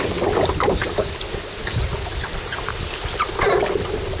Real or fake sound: real